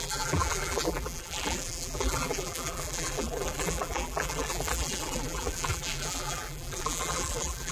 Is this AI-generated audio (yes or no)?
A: yes